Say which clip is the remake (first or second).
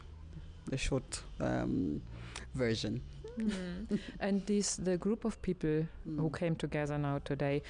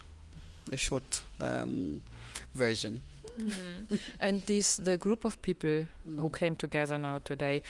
second